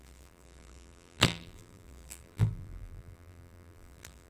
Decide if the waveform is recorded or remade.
remade